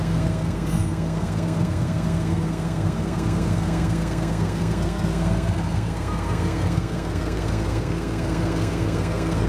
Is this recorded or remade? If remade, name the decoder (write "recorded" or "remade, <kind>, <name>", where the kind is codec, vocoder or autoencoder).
remade, codec, SNAC